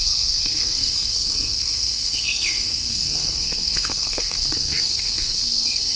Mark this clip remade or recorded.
remade